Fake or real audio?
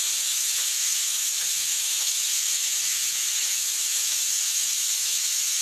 fake